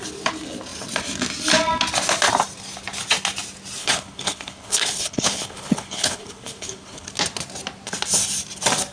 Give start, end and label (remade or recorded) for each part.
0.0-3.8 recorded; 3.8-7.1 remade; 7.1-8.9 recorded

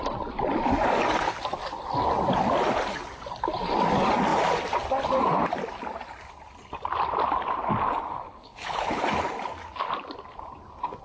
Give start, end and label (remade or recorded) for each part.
0.0-8.1 recorded; 8.1-9.0 remade; 9.0-11.0 recorded